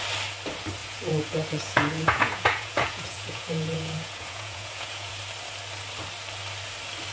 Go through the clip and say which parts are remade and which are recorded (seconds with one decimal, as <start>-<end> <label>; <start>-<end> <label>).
0.0-0.8 recorded; 0.8-5.1 remade; 5.1-7.1 recorded